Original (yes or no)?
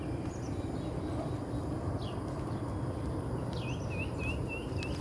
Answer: yes